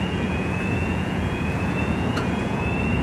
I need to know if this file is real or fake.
fake